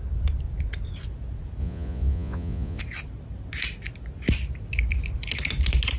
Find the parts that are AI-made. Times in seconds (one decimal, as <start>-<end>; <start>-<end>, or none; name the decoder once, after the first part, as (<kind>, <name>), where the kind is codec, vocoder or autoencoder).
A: 1.6-2.8 (vocoder, Vocos)

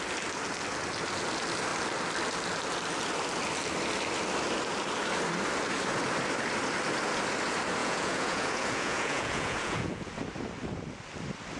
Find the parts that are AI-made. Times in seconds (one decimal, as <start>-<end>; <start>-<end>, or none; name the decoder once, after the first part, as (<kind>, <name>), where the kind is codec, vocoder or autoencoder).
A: 7.8-10.1 (vocoder, Vocos)

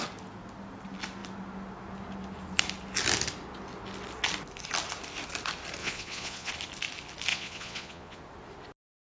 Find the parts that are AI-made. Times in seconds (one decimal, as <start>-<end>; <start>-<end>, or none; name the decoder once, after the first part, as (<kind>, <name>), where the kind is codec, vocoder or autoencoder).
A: 5.8-6.5 (vocoder, Vocos); 7.3-8.2